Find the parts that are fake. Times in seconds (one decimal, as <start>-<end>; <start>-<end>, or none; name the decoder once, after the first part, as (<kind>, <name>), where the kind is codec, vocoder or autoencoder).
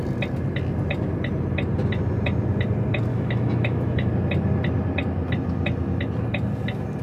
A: 3.1-4.1 (autoencoder, DAC-VAE)